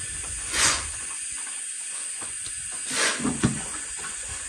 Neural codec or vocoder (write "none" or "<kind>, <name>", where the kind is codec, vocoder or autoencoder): vocoder, Vocos